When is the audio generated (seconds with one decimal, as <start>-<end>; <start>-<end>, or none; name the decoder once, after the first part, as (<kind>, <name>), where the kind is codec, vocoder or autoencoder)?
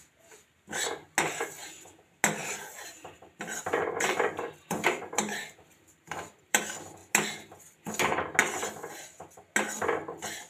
2.4-6.6 (vocoder, BigVGAN v2)